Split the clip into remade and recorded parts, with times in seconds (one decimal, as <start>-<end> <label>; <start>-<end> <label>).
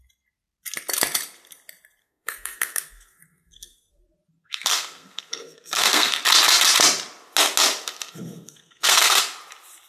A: 0.0-2.0 recorded; 2.0-4.0 remade; 4.0-4.4 recorded; 4.4-6.1 remade; 6.1-7.8 recorded; 7.8-9.2 remade; 9.2-9.9 recorded